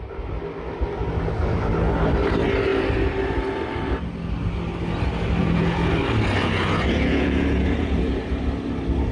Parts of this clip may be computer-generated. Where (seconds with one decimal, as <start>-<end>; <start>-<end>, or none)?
5.4-5.9; 6.4-8.4